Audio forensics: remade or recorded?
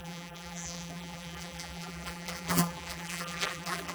remade